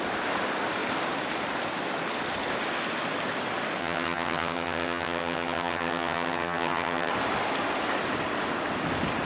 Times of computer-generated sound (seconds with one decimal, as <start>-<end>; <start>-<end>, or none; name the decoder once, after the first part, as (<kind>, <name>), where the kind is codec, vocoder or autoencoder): 3.8-7.1 (vocoder, HiFi-GAN)